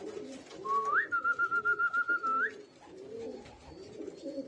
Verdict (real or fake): real